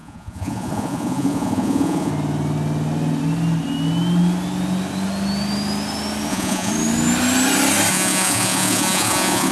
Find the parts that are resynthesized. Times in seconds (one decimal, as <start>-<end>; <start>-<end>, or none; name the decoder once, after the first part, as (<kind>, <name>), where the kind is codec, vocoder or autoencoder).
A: 0.0-2.1 (vocoder, Vocos); 6.3-6.7; 7.9-9.5